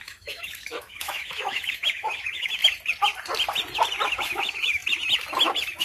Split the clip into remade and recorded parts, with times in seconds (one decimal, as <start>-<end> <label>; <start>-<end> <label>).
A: 0.0-2.6 remade; 2.6-4.1 recorded; 4.1-4.8 remade; 4.8-5.8 recorded